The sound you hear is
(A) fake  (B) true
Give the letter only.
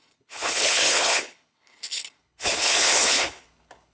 A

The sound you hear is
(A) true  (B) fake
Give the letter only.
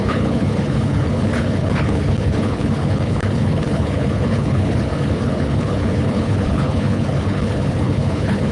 B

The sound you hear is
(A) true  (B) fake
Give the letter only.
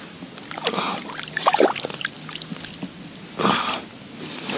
A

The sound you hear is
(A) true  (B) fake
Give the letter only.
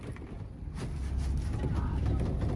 A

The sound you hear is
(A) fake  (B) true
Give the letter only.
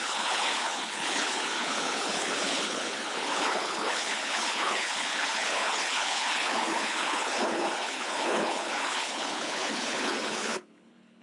A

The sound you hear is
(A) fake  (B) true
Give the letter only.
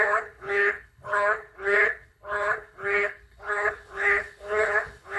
A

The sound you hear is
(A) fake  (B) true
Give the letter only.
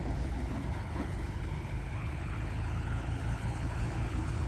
A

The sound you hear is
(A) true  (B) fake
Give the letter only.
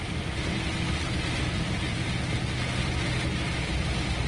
A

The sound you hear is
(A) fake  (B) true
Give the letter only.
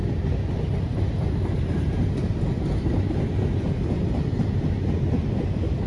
B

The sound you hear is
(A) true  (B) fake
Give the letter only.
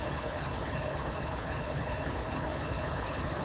B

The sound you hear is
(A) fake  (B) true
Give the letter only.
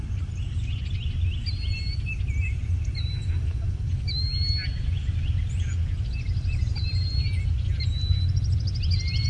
B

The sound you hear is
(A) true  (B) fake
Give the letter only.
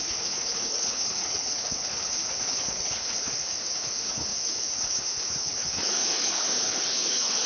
B